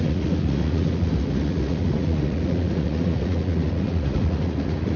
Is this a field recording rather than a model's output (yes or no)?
no